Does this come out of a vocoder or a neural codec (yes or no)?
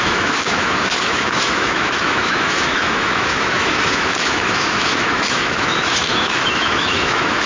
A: yes